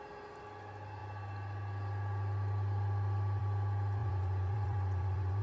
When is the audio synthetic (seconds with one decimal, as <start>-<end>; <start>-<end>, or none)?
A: 4.0-5.4